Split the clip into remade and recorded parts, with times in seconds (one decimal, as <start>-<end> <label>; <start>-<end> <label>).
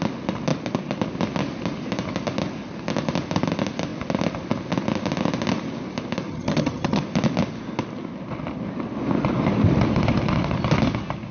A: 0.0-6.3 recorded; 6.3-7.0 remade; 7.0-11.3 recorded